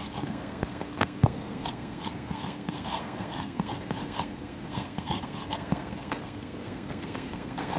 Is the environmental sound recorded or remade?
remade